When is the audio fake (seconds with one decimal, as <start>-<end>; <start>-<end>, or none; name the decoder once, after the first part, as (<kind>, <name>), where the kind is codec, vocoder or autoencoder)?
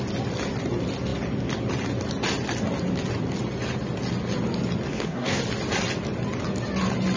4.9-5.4 (codec, SNAC)